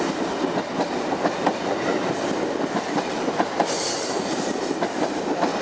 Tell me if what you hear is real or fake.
real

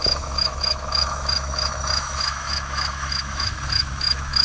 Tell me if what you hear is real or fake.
fake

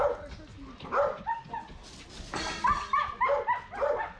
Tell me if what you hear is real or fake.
real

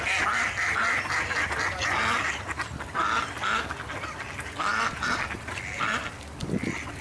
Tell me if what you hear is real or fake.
real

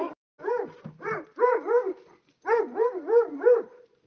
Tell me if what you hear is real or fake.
real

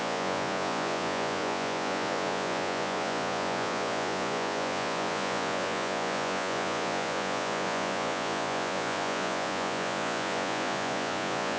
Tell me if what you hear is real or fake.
fake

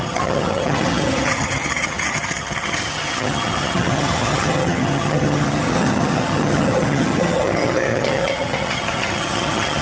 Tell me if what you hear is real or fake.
fake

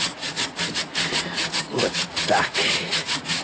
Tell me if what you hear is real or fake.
fake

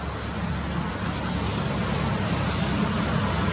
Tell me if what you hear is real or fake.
real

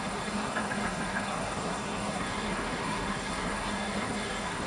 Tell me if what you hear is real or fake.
fake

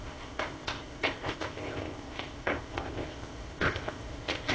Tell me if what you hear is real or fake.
fake